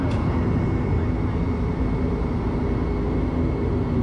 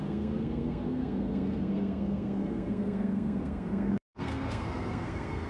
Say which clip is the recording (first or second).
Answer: first